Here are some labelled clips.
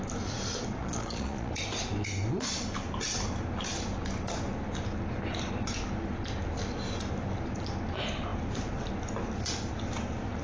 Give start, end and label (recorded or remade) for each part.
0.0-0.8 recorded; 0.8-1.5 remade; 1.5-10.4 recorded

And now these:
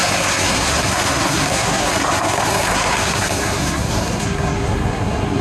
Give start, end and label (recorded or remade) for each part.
0.0-5.4 remade

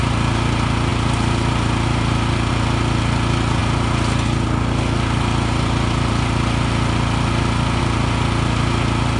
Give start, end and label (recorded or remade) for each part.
0.0-9.2 recorded

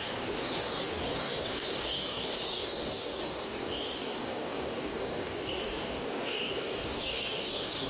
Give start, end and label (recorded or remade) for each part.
0.0-7.9 remade

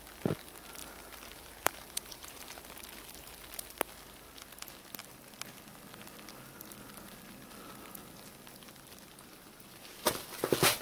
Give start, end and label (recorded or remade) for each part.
0.0-0.8 recorded; 0.8-2.6 remade; 2.6-10.8 recorded

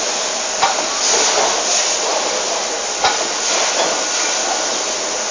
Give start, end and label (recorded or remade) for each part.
0.0-5.3 recorded

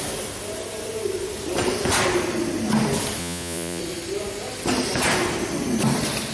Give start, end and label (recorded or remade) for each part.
0.0-3.2 recorded; 3.2-3.8 remade; 3.8-6.3 recorded

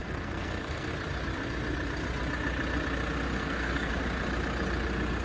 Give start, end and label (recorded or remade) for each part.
0.0-0.9 remade; 0.9-3.3 recorded; 3.3-3.9 remade; 3.9-5.2 recorded